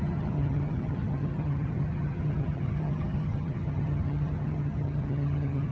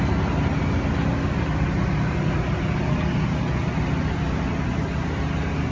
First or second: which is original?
second